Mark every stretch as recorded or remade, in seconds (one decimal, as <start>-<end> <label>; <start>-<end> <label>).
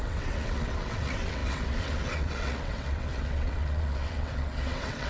0.0-5.1 remade